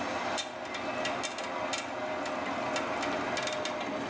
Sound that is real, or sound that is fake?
real